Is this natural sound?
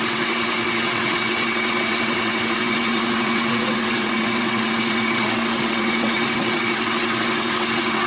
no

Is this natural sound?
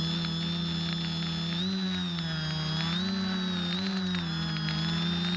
yes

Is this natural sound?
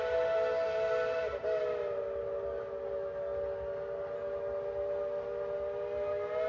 yes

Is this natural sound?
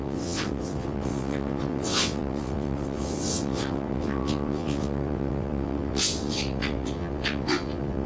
no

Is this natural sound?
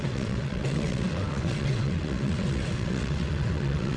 no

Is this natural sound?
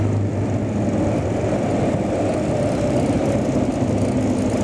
yes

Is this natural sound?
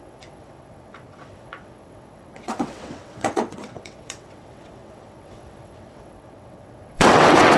no